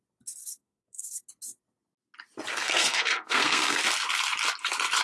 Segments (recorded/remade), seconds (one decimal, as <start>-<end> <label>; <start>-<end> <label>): 0.0-0.4 recorded; 0.4-1.2 remade; 1.2-2.5 recorded; 2.5-3.8 remade; 3.8-5.0 recorded